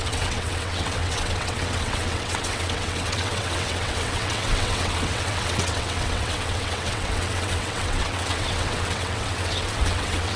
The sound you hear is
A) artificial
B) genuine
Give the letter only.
A